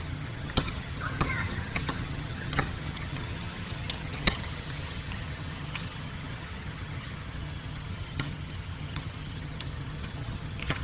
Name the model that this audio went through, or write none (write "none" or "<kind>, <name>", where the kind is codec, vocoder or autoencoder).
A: vocoder, HiFi-GAN